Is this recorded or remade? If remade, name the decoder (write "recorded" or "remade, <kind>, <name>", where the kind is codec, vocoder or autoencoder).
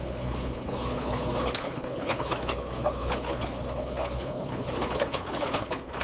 remade, codec, HILCodec